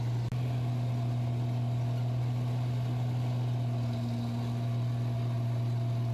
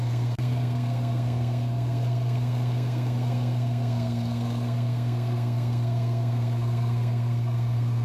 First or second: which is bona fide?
first